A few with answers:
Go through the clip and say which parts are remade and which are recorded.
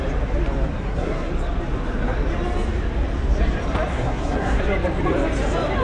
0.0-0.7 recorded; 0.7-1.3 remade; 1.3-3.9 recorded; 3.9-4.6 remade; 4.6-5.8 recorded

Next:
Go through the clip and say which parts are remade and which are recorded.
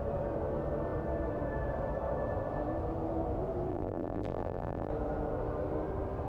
0.0-3.7 recorded; 3.7-4.9 remade; 4.9-6.3 recorded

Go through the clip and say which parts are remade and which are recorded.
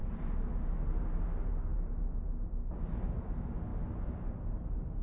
0.0-5.0 recorded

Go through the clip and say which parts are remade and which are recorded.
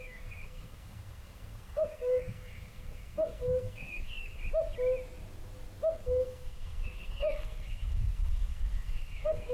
0.0-4.4 remade; 4.4-5.9 recorded; 5.9-9.5 remade